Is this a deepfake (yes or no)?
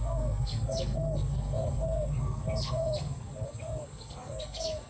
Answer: yes